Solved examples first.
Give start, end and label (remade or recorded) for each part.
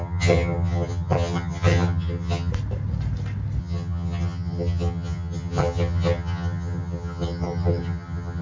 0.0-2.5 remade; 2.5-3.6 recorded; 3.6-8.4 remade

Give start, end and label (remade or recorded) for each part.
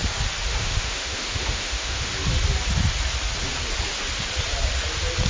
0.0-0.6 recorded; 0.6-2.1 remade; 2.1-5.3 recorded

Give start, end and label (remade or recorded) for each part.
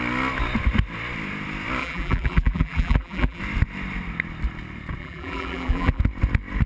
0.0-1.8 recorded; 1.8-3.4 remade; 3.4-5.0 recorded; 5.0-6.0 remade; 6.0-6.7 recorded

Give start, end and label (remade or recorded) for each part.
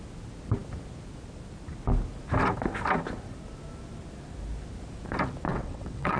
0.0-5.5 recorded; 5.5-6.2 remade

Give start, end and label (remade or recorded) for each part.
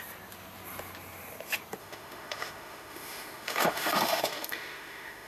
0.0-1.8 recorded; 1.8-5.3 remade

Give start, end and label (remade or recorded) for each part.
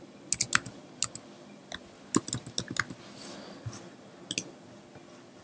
0.0-5.4 recorded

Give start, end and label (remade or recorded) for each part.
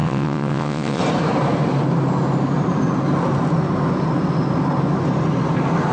0.0-1.0 remade; 1.0-5.9 recorded